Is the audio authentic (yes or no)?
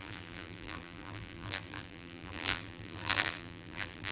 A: no